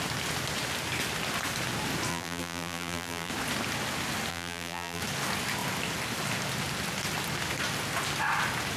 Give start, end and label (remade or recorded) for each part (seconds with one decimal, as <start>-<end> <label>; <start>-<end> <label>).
0.0-2.1 recorded; 2.1-3.3 remade; 3.3-4.3 recorded; 4.3-5.0 remade; 5.0-8.8 recorded